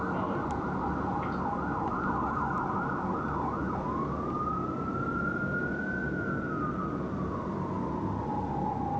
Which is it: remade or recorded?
recorded